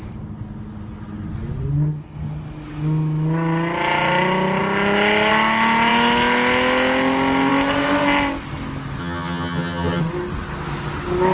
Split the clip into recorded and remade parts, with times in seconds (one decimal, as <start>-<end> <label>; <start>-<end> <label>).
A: 0.0-9.0 recorded; 9.0-10.0 remade; 10.0-11.3 recorded